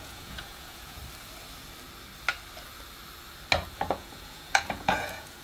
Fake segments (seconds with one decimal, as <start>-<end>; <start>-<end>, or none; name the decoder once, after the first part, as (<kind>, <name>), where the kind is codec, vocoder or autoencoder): 0.0-1.0 (vocoder, Vocos); 3.9-5.4